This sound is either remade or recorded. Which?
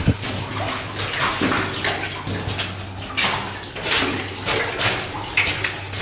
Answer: recorded